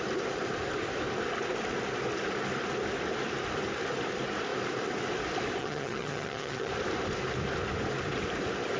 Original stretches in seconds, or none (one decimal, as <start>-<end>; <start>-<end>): 0.0-5.6; 6.7-8.8